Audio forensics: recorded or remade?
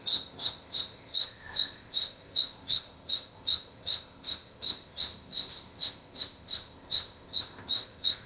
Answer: remade